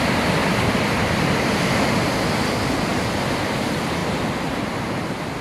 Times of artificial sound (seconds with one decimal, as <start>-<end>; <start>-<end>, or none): 0.4-1.9; 4.0-4.6